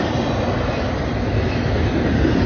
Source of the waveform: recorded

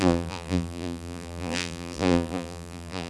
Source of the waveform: remade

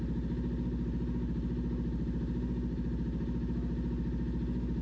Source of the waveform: recorded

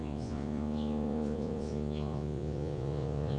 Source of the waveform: remade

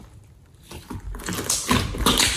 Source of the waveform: recorded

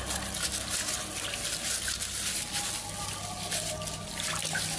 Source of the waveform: recorded